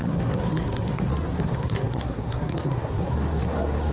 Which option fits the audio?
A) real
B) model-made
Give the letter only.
B